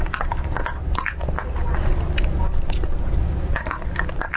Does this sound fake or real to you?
real